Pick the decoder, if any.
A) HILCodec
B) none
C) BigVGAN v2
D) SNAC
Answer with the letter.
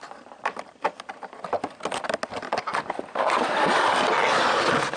B